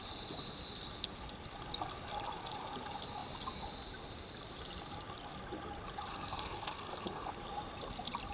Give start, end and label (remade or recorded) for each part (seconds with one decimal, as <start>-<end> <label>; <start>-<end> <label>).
0.0-6.1 recorded; 6.1-7.3 remade; 7.3-8.3 recorded